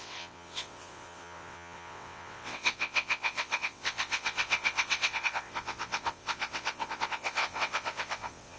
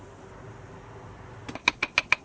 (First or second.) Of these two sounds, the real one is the second